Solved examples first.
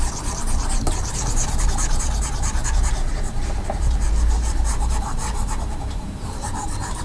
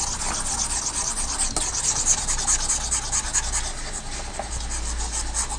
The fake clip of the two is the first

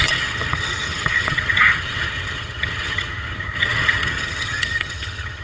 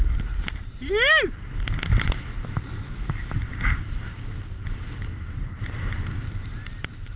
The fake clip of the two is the first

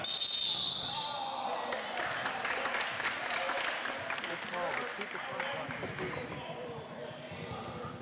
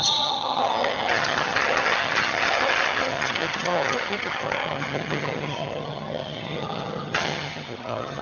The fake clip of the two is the second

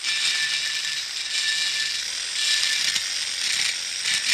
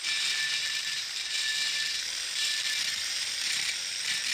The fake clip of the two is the second